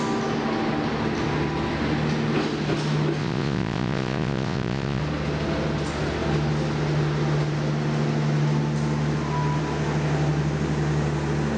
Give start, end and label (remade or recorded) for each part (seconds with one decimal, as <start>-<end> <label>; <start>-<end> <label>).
0.0-3.2 recorded; 3.2-5.0 remade; 5.0-11.6 recorded